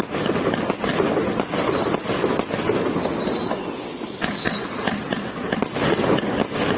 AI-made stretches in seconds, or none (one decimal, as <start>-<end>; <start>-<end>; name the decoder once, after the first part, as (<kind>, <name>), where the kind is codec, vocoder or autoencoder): none